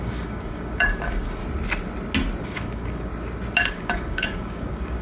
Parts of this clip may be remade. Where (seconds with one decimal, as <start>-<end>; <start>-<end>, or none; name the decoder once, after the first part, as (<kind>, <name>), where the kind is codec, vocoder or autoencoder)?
0.0-1.4 (codec, DAC); 2.4-3.1; 3.7-5.0